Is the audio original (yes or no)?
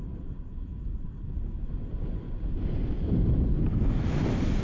yes